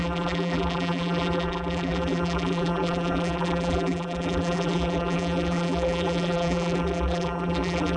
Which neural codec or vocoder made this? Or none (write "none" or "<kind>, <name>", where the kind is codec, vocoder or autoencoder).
vocoder, BigVGAN v2